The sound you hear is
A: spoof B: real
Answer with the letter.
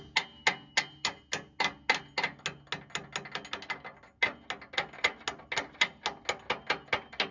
B